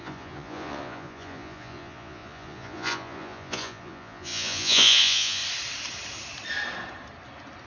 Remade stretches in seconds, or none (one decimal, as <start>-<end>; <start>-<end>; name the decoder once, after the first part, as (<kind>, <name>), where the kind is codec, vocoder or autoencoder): 0.0-5.4 (vocoder, Vocos)